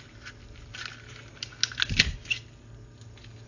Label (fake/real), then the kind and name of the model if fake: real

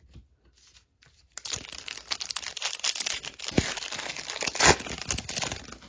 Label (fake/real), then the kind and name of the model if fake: real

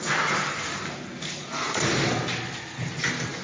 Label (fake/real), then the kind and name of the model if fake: real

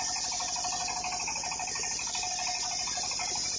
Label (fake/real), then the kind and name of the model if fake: real